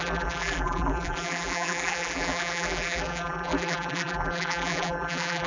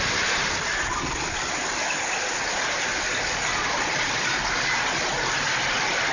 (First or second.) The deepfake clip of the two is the first